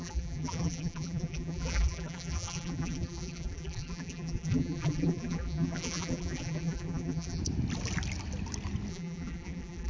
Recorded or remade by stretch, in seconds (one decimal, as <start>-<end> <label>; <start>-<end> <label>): 0.0-7.4 remade; 7.4-8.9 recorded; 8.9-9.9 remade